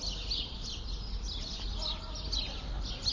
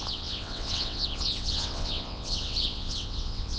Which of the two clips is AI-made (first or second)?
second